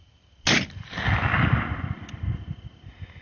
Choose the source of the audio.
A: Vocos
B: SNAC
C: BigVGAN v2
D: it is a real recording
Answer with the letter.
D